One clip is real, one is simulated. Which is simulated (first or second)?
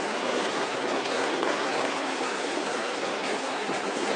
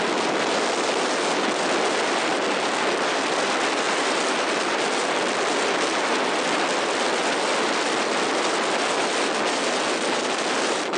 first